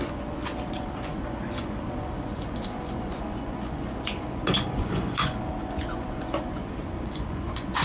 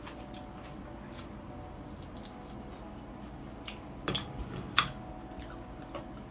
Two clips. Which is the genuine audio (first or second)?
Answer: second